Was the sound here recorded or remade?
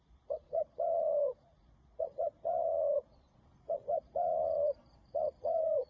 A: remade